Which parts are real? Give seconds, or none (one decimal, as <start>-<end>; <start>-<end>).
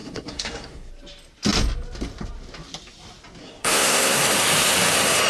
0.9-3.4; 4.2-5.3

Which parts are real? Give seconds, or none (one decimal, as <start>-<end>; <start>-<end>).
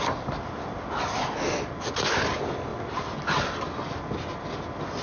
0.0-5.0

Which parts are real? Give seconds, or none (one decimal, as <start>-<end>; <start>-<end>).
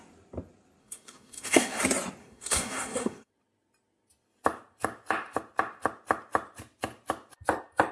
0.0-0.8; 1.8-2.2; 3.3-7.9